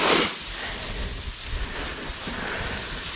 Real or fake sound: fake